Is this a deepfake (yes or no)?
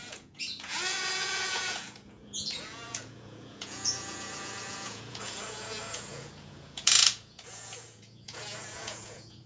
yes